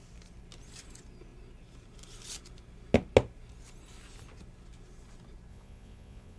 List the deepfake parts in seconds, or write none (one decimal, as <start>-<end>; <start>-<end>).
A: 5.5-6.4